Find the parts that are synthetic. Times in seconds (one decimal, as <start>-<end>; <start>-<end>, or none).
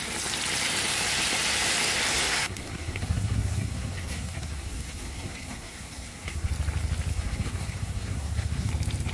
2.1-6.5; 7.1-8.7